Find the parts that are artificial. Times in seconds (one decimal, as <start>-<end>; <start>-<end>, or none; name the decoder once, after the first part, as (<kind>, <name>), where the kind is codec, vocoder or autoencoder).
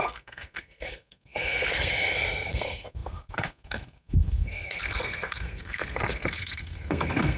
0.0-7.4 (codec, SNAC)